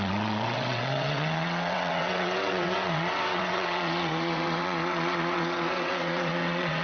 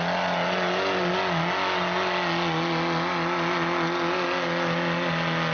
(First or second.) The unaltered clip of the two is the second